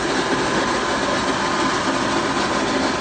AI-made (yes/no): no